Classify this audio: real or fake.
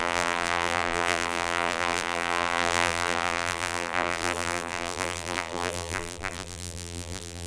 fake